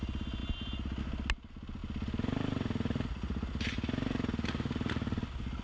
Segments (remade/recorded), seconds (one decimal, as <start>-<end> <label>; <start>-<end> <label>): 0.0-5.6 recorded

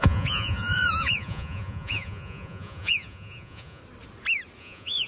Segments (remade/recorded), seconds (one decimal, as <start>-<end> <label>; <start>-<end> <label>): 0.0-3.8 remade; 3.8-4.6 recorded; 4.6-5.1 remade